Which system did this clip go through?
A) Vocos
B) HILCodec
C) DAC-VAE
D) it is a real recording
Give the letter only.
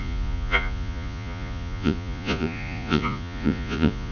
A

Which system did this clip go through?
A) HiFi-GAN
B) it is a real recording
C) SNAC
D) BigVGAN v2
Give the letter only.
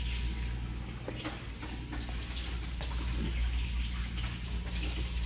B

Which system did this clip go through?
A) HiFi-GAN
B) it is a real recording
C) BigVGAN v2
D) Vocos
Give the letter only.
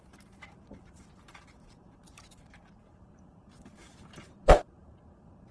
C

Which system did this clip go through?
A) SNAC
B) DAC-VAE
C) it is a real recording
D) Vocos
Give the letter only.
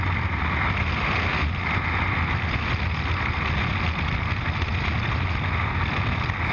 C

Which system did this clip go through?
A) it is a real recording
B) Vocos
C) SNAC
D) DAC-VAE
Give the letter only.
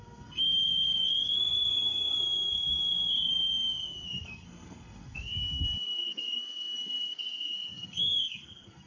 C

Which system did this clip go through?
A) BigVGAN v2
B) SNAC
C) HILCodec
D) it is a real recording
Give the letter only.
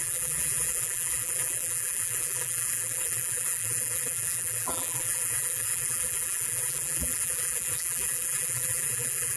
A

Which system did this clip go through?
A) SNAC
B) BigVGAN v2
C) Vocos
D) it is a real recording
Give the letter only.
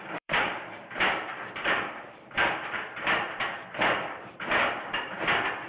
B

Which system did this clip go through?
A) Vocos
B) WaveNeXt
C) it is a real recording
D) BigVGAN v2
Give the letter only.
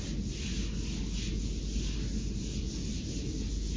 C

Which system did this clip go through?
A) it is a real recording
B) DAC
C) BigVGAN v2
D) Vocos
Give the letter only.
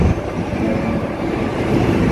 C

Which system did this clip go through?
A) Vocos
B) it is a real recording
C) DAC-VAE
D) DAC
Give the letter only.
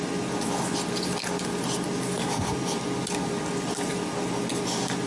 B